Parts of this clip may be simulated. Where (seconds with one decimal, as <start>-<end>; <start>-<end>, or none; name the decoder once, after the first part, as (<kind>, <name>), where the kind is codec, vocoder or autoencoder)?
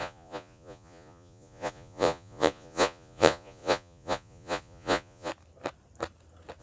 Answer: 0.0-5.3 (vocoder, Vocos)